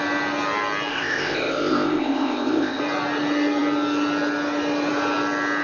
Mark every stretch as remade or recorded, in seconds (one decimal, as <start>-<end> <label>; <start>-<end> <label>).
0.0-0.9 recorded; 0.9-2.8 remade; 2.8-5.6 recorded